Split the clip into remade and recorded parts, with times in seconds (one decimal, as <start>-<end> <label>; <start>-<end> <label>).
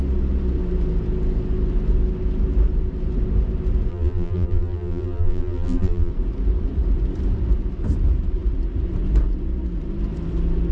0.0-3.9 recorded; 3.9-6.1 remade; 6.1-10.7 recorded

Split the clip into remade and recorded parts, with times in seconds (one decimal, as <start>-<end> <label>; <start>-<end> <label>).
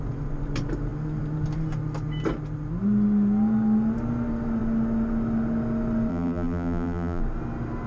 0.0-6.1 recorded; 6.1-7.2 remade; 7.2-7.9 recorded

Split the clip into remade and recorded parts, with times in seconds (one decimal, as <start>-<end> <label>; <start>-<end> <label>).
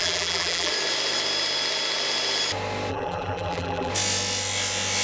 0.0-0.7 remade; 0.7-2.9 recorded; 2.9-3.9 remade; 3.9-5.0 recorded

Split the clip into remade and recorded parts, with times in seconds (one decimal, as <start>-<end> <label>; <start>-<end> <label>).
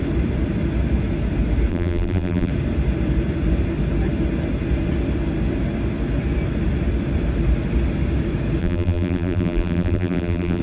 0.0-1.7 recorded; 1.7-2.5 remade; 2.5-8.6 recorded; 8.6-10.6 remade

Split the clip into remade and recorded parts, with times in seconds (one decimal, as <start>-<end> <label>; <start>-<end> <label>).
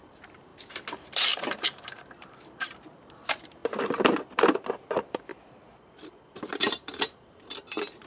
0.0-5.3 remade; 5.3-6.5 recorded; 6.5-8.1 remade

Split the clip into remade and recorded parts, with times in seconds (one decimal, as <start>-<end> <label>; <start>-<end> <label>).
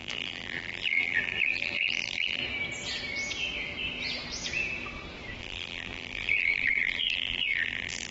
0.0-2.4 remade; 2.4-5.4 recorded; 5.4-8.1 remade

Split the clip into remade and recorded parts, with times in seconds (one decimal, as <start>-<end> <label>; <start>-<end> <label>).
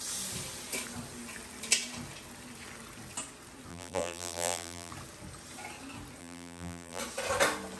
0.0-3.7 recorded; 3.7-4.9 remade; 4.9-6.2 recorded; 6.2-7.0 remade; 7.0-7.8 recorded